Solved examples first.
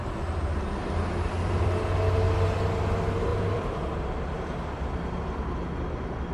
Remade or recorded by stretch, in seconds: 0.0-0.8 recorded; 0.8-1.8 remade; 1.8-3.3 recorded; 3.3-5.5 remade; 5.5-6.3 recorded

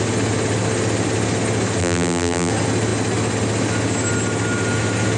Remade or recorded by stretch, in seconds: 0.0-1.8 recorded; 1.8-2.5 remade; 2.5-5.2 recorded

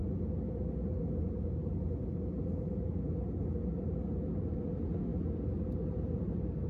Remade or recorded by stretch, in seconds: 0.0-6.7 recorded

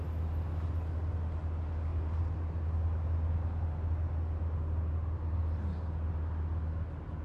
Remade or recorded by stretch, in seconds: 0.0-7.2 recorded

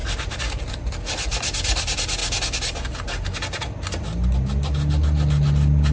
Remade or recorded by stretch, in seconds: 0.0-2.2 remade; 2.2-5.9 recorded

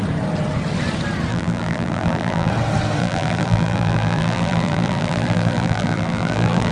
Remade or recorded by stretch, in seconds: 0.0-1.3 recorded; 1.3-2.5 remade; 2.5-3.0 recorded; 3.0-6.7 remade

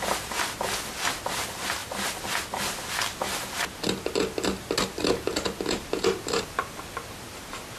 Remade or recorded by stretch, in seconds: 0.0-7.8 recorded

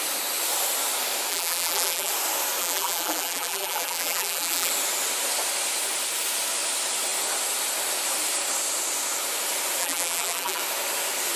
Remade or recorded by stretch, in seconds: 0.0-1.3 recorded; 1.3-2.1 remade; 2.1-2.6 recorded; 2.6-4.7 remade; 4.7-9.8 recorded; 9.8-10.6 remade; 10.6-11.4 recorded